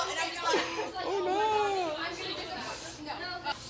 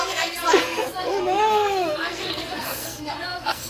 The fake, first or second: second